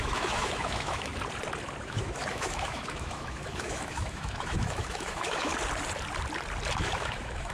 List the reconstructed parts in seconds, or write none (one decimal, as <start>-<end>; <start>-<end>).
0.0-1.1; 1.8-5.5; 6.8-7.5